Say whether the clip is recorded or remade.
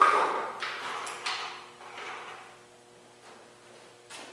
recorded